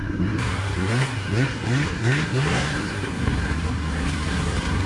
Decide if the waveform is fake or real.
fake